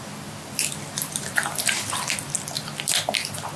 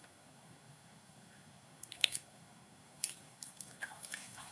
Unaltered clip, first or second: first